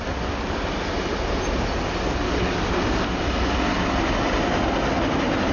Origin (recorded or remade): recorded